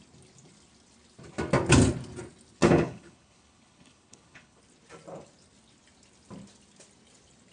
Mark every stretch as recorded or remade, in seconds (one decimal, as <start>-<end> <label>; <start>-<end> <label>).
0.0-2.6 recorded; 2.6-4.6 remade; 4.6-7.5 recorded